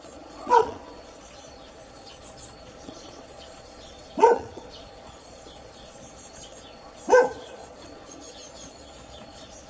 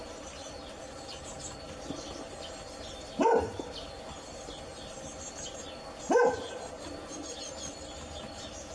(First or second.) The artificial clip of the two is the first